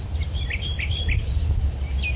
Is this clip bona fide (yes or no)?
yes